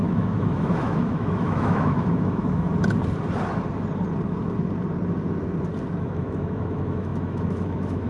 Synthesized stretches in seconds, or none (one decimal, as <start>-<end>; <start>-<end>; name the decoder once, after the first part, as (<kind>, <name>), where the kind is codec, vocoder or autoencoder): 0.0-2.7 (autoencoder, DAC-VAE); 6.0-8.1